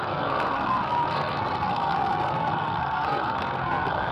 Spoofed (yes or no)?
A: yes